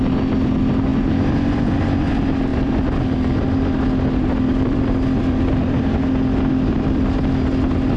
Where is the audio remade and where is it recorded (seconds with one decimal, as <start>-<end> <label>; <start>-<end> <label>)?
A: 0.0-0.9 recorded; 0.9-1.7 remade; 1.7-2.5 recorded; 2.5-3.5 remade; 3.5-4.5 recorded; 4.5-6.1 remade; 6.1-8.0 recorded